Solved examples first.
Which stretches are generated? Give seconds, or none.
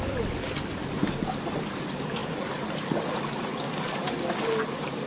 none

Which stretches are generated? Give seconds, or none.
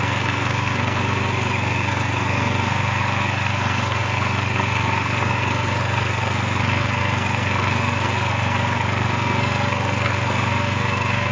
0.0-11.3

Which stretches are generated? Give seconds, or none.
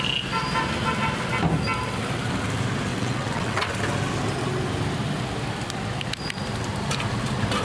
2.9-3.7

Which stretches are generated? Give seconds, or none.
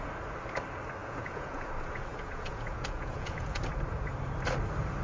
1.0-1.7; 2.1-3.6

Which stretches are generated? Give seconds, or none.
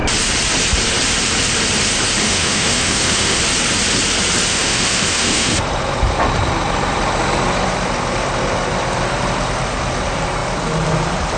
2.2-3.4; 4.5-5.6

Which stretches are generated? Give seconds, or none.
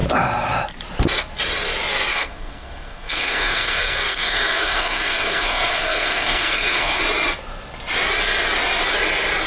2.1-7.0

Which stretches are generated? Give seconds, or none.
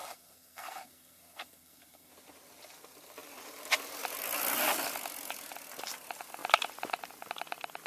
0.0-2.1